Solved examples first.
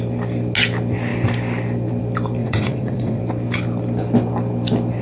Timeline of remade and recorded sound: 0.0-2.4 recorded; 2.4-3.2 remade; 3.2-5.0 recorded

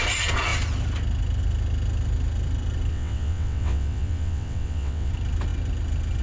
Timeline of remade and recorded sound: 0.0-2.9 recorded; 2.9-5.1 remade; 5.1-6.2 recorded

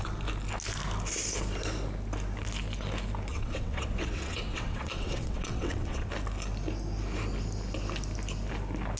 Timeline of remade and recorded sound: 0.0-3.3 recorded; 3.3-6.1 remade; 6.1-9.0 recorded

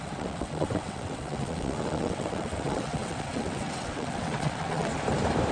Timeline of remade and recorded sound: 0.0-4.9 remade; 4.9-5.5 recorded

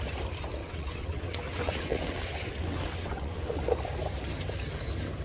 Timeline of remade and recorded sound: 0.0-0.6 recorded; 0.6-3.6 remade; 3.6-5.2 recorded

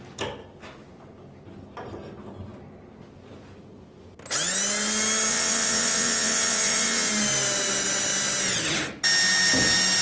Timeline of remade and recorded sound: 0.0-5.3 recorded; 5.3-7.1 remade; 7.1-10.0 recorded

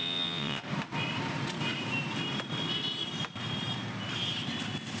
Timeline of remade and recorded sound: 0.0-0.6 remade; 0.6-5.0 recorded

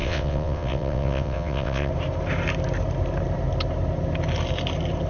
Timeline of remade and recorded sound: 0.0-1.9 remade; 1.9-5.1 recorded